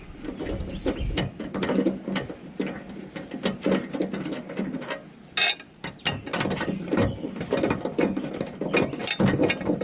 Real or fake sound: real